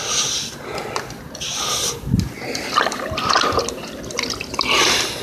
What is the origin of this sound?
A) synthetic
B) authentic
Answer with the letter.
B